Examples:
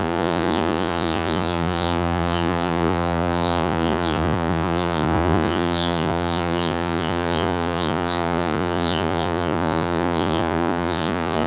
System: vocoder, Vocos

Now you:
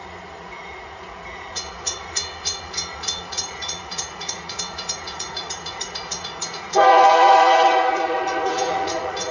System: vocoder, Vocos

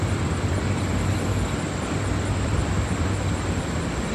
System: none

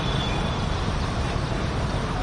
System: vocoder, BigVGAN v2